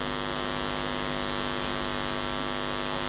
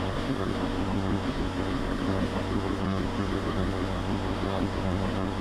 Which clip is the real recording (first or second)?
first